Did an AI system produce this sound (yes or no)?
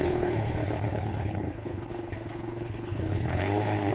yes